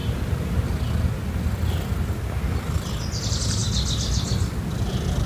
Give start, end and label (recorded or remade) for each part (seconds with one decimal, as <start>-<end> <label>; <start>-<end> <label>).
0.0-5.3 recorded